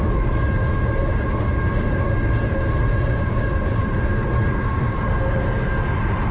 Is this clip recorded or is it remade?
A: recorded